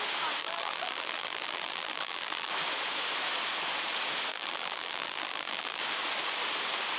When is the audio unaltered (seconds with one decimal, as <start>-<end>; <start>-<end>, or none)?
0.0-0.4; 2.5-4.3; 5.8-7.0